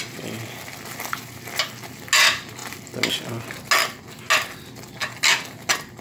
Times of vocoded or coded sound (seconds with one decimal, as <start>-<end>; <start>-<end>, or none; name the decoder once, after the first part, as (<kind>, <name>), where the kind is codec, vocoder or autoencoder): none